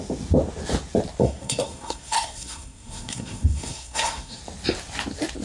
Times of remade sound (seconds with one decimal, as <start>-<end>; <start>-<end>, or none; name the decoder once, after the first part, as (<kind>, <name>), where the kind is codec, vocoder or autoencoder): 1.2-4.4 (codec, SNAC)